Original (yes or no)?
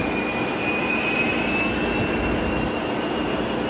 yes